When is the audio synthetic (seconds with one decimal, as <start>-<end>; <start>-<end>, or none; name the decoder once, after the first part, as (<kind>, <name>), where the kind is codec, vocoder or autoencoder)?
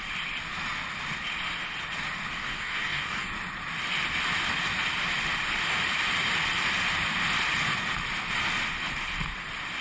2.4-3.3 (codec, DAC)